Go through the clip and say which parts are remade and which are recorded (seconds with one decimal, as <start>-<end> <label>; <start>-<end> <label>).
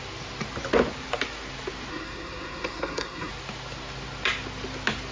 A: 0.0-1.9 recorded; 1.9-3.3 remade; 3.3-5.1 recorded